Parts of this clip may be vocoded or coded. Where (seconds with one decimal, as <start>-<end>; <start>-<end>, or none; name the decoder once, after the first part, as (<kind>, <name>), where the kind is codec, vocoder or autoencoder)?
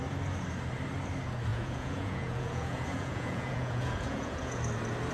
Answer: 1.5-4.6 (vocoder, Vocos)